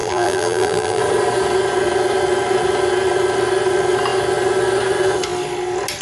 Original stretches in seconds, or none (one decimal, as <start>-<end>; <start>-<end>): 1.0-6.0